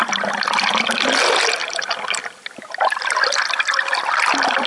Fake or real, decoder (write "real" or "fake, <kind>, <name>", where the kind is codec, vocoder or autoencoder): real